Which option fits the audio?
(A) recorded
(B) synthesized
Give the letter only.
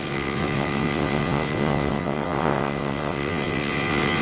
B